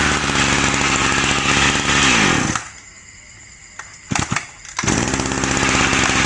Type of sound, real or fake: real